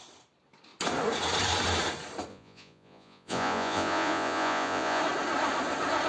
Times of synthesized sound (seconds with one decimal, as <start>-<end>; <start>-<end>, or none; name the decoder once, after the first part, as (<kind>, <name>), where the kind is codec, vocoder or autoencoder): 2.3-5.0 (vocoder, Vocos)

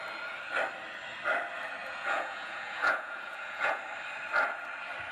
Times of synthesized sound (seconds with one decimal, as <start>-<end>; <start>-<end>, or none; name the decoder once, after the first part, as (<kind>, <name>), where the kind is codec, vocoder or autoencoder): 1.8-3.8 (vocoder, Vocos)